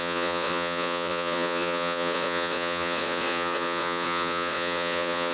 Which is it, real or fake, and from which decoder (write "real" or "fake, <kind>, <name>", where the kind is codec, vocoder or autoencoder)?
fake, vocoder, Vocos